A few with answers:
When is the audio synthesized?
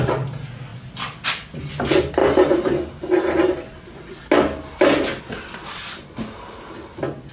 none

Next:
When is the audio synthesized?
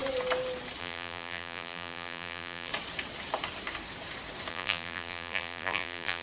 0.8-2.7 (vocoder, BigVGAN v2); 4.5-6.2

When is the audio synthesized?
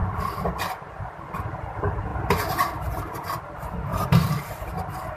2.1-3.4 (vocoder, BigVGAN v2); 3.9-4.6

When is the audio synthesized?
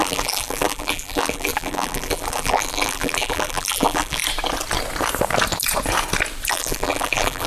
0.0-4.2 (vocoder, BigVGAN v2); 6.5-7.5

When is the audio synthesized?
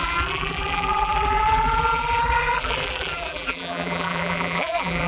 0.0-5.1 (vocoder, BigVGAN v2)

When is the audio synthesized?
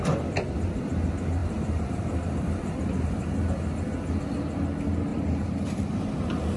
1.4-3.0 (vocoder, BigVGAN v2); 5.1-6.6